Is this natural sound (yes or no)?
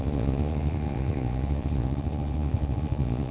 no